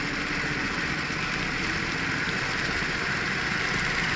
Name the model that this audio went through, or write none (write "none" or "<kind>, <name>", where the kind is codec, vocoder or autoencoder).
none